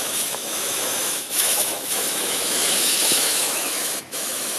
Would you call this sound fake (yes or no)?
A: yes